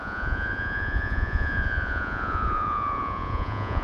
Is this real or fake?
fake